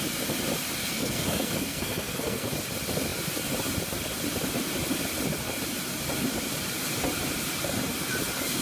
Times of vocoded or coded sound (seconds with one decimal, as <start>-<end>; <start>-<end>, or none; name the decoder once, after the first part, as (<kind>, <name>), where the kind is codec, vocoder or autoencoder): 0.8-2.5 (codec, SNAC)